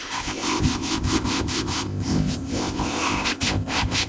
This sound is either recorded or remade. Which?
remade